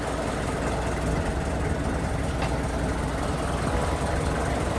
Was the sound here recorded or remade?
recorded